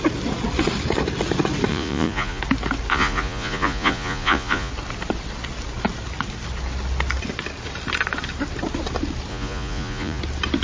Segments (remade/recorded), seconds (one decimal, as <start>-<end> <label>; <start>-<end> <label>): 0.0-1.7 recorded; 1.7-2.4 remade; 2.4-2.9 recorded; 2.9-4.7 remade; 4.7-9.3 recorded; 9.3-10.2 remade; 10.2-10.6 recorded